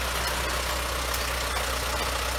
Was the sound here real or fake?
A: real